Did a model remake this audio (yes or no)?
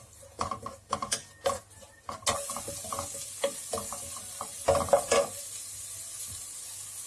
no